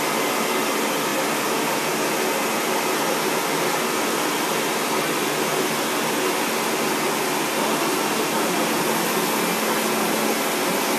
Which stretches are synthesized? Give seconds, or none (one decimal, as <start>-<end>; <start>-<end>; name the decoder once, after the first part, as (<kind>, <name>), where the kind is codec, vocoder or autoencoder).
none